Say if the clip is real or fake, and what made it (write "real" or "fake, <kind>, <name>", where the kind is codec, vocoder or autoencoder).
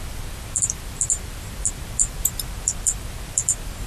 fake, vocoder, BigVGAN v2